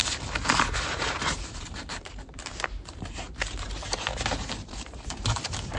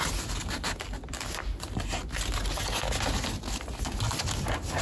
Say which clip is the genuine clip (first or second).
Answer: second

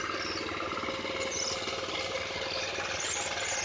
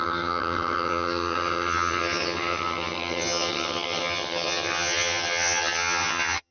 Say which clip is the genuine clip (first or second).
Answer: first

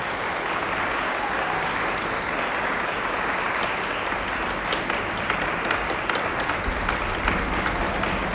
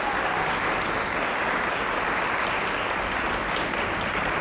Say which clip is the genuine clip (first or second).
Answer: first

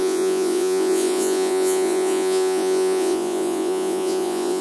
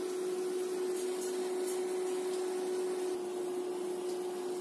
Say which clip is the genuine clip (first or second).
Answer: second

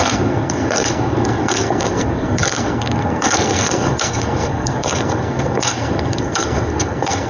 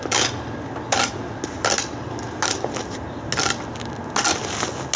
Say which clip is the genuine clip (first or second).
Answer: second